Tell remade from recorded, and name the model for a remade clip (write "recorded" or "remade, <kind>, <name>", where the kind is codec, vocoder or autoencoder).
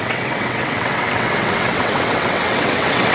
remade, vocoder, WaveNeXt